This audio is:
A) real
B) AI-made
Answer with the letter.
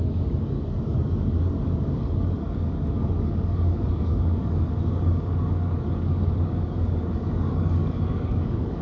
B